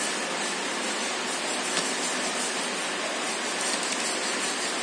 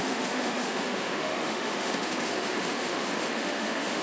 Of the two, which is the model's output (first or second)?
second